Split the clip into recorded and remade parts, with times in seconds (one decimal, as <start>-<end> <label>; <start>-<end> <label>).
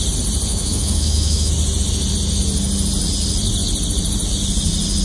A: 0.0-0.5 recorded; 0.5-1.5 remade; 1.5-5.0 recorded